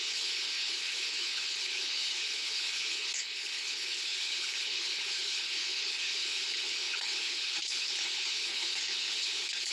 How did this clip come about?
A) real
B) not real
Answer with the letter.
B